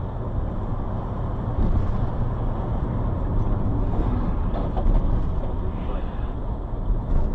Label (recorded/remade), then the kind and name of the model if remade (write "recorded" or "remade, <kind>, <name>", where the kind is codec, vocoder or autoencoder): recorded